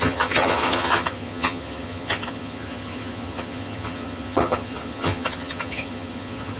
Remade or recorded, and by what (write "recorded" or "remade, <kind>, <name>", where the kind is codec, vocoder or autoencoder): remade, vocoder, HiFi-GAN